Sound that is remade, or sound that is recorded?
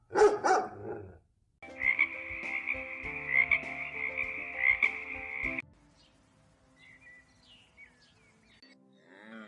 recorded